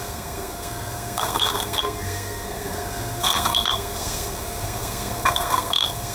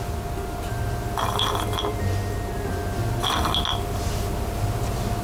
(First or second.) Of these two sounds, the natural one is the second